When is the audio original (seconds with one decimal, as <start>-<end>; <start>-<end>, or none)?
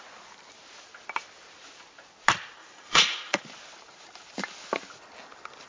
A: 0.0-2.6; 3.4-5.7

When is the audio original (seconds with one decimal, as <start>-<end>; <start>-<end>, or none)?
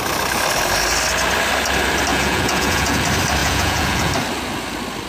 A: 0.0-2.1; 3.0-3.4; 4.1-5.1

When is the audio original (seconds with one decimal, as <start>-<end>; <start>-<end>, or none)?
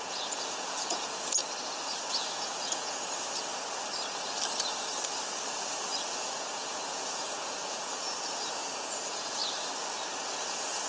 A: 1.4-2.1; 3.5-6.1; 9.4-10.2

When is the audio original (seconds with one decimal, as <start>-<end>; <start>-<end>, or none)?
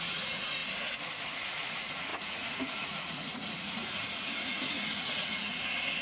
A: 0.6-1.3